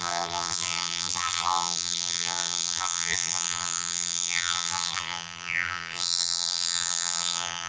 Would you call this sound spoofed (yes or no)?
yes